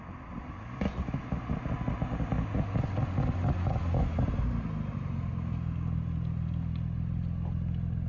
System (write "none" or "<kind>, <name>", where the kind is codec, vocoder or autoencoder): none